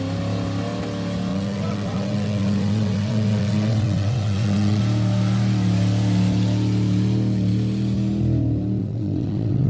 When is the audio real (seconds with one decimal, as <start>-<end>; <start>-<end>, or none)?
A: 0.0-1.3; 4.8-8.8